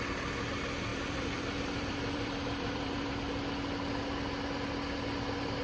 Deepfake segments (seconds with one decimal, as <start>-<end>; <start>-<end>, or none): 0.9-3.1